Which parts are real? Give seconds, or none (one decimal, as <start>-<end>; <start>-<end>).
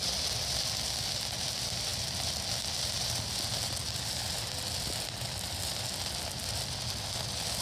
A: 0.0-7.6